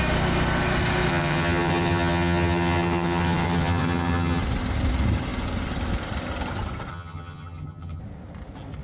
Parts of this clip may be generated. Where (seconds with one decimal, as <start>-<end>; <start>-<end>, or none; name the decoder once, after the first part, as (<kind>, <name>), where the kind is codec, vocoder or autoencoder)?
1.1-4.4 (vocoder, HiFi-GAN); 6.9-8.0

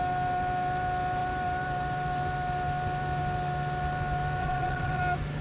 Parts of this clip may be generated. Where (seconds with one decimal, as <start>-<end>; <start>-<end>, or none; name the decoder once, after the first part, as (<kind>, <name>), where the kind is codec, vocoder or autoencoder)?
4.4-5.0 (vocoder, WaveNeXt)

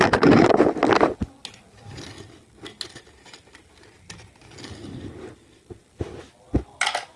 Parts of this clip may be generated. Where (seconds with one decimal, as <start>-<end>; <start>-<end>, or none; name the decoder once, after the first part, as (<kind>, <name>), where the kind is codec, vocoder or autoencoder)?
none

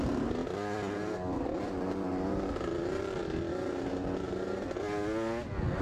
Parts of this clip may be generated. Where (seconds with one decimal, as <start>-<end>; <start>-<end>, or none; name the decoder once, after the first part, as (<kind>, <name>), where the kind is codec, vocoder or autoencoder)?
none

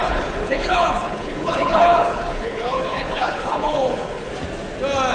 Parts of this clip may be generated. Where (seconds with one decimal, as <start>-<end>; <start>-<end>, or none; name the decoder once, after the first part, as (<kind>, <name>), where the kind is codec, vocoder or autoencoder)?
0.0-4.3 (codec, HILCodec)

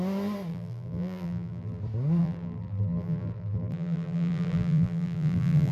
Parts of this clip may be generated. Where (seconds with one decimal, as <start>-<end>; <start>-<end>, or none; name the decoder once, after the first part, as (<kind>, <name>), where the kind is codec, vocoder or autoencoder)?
0.5-1.8 (vocoder, BigVGAN v2); 2.2-5.7